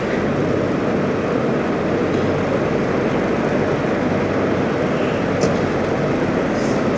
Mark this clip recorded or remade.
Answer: recorded